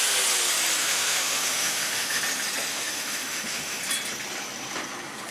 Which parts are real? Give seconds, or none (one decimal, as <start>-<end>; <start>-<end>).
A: 0.0-0.8; 2.2-2.7; 3.8-5.3